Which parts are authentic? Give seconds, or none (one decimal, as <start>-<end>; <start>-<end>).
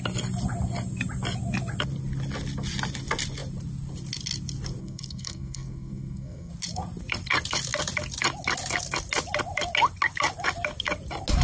0.0-4.8; 6.5-11.4